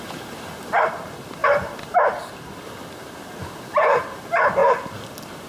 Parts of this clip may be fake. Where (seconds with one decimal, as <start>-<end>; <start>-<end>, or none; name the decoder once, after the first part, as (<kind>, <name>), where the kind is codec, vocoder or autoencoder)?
none